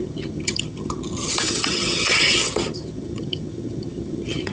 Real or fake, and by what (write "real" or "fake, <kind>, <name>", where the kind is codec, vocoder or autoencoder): fake, vocoder, HiFi-GAN